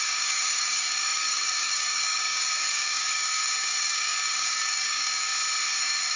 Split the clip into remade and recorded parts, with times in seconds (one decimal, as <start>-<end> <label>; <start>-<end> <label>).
0.0-5.3 remade; 5.3-5.8 recorded; 5.8-6.2 remade